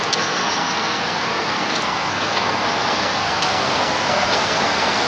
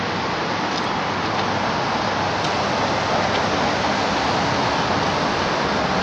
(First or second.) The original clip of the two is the second